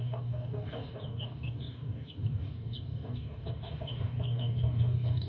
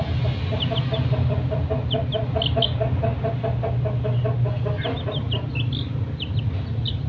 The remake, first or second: first